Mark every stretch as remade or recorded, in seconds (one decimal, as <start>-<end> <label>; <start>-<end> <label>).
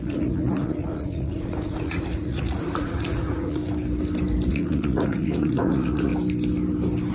0.0-3.6 remade; 3.6-4.5 recorded; 4.5-6.1 remade; 6.1-7.1 recorded